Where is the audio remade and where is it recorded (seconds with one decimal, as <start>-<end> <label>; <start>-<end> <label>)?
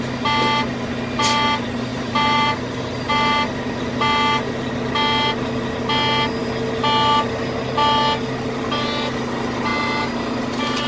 0.0-1.9 recorded; 1.9-3.1 remade; 3.1-10.9 recorded